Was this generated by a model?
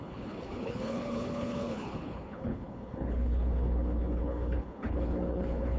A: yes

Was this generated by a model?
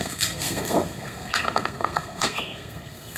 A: yes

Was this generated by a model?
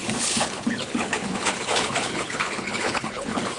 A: yes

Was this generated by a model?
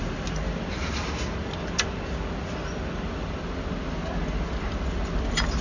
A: no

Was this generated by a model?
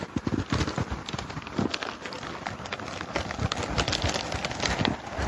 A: no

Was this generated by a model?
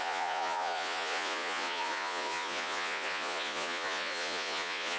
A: yes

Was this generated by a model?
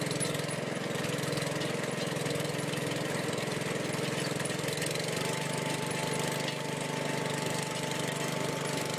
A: no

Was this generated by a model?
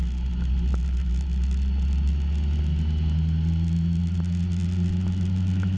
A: no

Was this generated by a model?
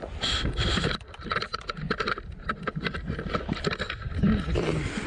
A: no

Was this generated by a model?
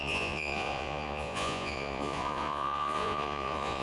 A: yes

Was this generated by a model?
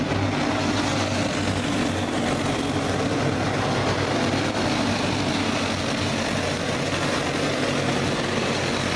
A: no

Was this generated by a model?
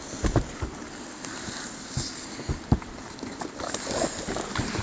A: no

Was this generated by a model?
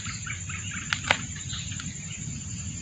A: no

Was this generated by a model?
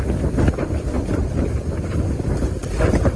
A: no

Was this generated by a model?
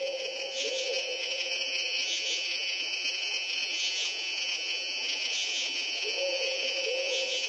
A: yes